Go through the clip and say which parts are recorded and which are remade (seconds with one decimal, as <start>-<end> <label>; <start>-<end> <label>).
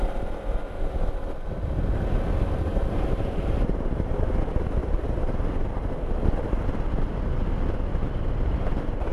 0.0-2.7 recorded; 2.7-4.3 remade; 4.3-4.8 recorded; 4.8-6.1 remade; 6.1-9.1 recorded